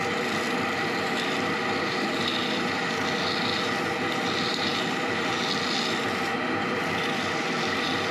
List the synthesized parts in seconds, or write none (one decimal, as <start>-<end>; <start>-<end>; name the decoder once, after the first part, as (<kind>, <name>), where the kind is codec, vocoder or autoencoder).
none